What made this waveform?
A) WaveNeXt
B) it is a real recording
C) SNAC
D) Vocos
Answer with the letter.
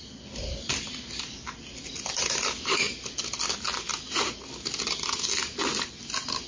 B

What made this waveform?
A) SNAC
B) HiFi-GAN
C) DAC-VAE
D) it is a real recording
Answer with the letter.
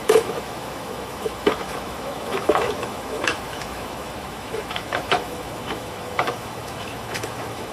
C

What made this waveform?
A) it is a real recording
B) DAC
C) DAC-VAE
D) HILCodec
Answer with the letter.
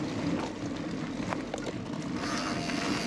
A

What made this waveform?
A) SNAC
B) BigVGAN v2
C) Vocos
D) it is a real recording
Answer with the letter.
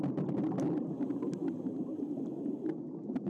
D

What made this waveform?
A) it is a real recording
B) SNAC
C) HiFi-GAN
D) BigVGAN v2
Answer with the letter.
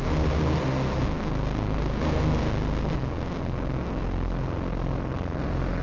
A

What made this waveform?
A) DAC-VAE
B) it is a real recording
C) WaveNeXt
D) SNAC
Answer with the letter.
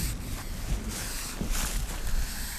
B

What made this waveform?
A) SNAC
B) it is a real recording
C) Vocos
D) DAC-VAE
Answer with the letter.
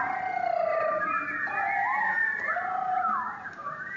B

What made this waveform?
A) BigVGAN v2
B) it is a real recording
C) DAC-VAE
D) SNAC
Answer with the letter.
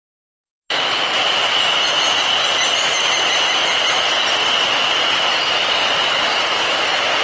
B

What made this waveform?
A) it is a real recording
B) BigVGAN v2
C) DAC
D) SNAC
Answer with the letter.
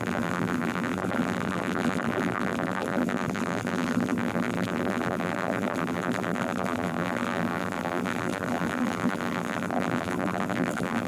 B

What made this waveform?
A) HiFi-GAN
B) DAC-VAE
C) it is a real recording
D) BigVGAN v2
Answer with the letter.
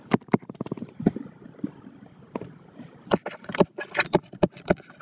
C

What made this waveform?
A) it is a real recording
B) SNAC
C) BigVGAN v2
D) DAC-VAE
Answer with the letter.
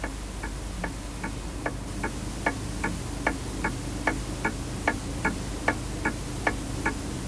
A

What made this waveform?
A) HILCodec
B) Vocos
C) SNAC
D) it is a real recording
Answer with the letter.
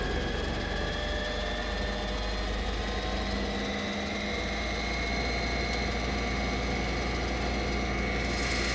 D